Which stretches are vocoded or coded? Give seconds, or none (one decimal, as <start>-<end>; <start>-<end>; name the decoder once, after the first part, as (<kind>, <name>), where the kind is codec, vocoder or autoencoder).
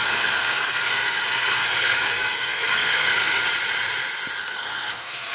0.0-3.4 (codec, SNAC); 4.4-5.3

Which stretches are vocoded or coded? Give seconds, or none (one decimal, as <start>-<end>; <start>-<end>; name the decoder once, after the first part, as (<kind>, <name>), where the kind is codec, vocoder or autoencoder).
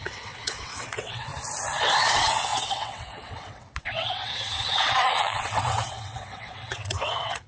0.0-1.3 (vocoder, WaveNeXt); 2.1-7.5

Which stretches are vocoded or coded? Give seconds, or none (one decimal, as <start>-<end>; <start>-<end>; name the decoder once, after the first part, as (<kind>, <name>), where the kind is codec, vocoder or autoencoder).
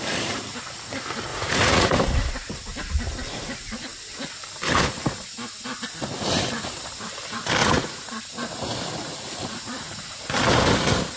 1.3-1.9 (vocoder, Vocos); 7.6-8.2; 9.0-10.3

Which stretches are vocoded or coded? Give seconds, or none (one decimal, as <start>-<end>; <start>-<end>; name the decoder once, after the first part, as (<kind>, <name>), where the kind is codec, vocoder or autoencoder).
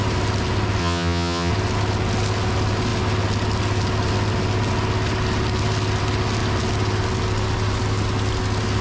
0.8-1.5 (vocoder, HiFi-GAN)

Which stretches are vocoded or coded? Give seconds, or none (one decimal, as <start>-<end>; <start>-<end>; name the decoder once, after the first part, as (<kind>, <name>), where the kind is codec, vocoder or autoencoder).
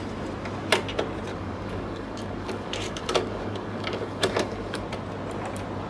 1.3-4.8 (codec, DAC)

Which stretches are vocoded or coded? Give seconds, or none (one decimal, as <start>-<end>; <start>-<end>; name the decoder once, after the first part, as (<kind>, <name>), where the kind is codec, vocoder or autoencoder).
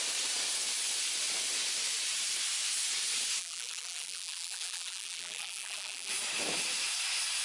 3.4-6.1 (vocoder, BigVGAN v2)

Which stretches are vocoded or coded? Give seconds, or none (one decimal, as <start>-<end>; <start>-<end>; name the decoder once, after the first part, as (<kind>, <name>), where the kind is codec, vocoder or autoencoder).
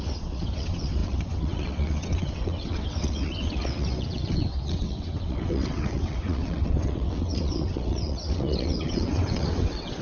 0.0-10.0 (vocoder, WaveNeXt)